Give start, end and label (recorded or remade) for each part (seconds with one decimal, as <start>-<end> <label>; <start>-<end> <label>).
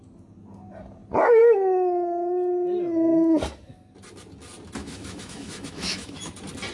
0.0-4.8 recorded; 4.8-6.3 remade; 6.3-6.7 recorded